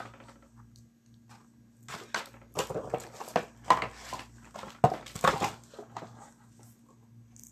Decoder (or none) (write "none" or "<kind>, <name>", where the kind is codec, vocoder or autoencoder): none